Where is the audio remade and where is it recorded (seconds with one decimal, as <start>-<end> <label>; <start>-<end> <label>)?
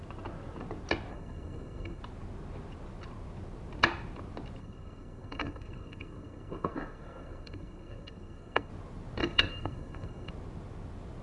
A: 0.0-1.1 recorded; 1.1-2.0 remade; 2.0-4.6 recorded; 4.6-8.7 remade; 8.7-9.2 recorded; 9.2-10.3 remade; 10.3-11.2 recorded